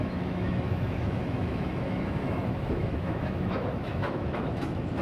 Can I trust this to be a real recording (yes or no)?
no